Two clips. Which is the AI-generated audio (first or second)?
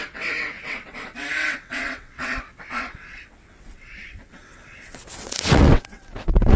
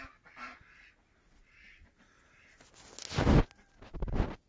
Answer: first